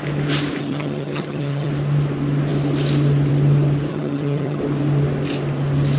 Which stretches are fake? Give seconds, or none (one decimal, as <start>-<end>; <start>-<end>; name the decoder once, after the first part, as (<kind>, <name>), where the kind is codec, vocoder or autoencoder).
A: 0.6-1.7 (vocoder, HiFi-GAN); 3.9-4.6